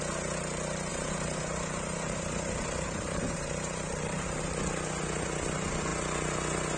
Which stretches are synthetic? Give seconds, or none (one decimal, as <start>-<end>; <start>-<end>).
0.9-4.4